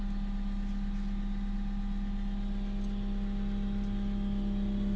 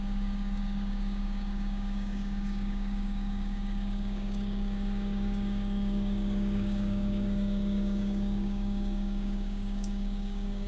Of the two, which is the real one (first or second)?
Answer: first